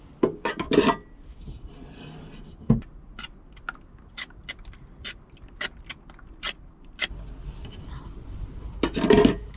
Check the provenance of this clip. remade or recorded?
recorded